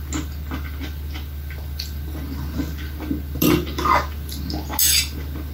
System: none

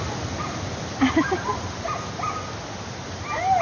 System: none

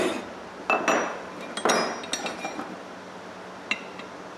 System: none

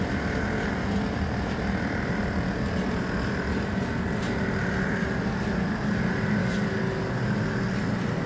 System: none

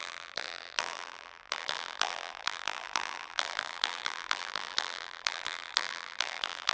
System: vocoder, BigVGAN v2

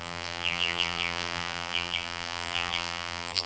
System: vocoder, BigVGAN v2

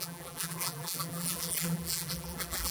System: vocoder, BigVGAN v2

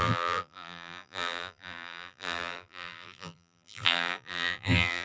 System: vocoder, BigVGAN v2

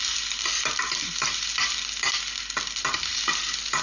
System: none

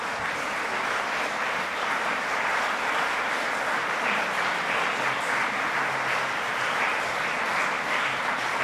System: none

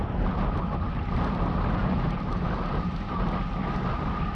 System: none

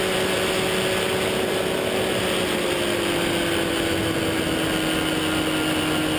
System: none